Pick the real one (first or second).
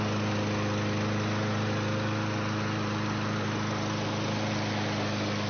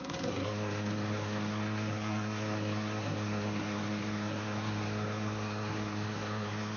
first